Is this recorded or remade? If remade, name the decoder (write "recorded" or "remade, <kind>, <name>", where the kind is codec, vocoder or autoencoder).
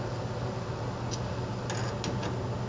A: recorded